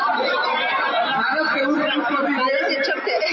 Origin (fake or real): real